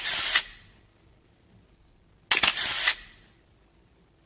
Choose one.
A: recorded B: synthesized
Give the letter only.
A